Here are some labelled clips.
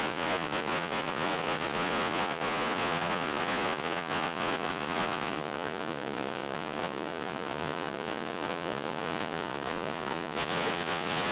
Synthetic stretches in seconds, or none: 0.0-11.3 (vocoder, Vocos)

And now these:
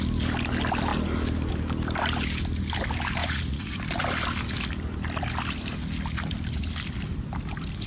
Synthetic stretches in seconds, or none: 3.2-3.8 (vocoder, Vocos)

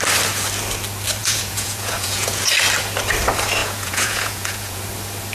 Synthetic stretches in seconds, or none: 1.2-2.4 (vocoder, Vocos); 3.6-4.8

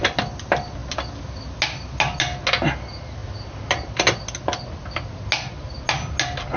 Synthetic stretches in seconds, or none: none